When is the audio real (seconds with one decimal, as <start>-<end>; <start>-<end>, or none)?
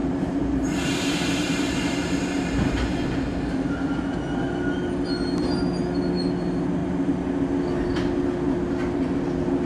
3.0-6.8; 7.3-9.7